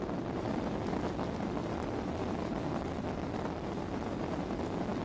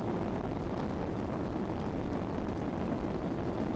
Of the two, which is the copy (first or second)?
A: second